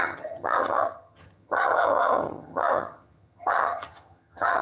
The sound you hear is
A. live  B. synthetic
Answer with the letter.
B